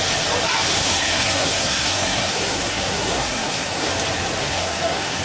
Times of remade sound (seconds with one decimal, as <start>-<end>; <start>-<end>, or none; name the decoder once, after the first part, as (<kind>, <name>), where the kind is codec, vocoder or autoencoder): 0.8-3.9 (codec, SNAC); 4.4-5.2